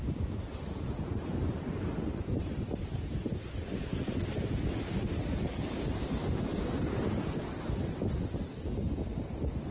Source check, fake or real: real